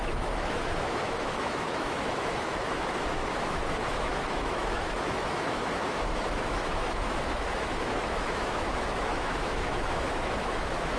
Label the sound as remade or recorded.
remade